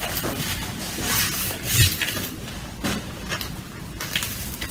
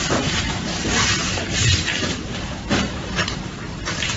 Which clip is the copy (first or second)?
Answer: second